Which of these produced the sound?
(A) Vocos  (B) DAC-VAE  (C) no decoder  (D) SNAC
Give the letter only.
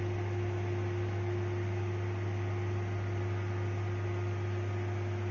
C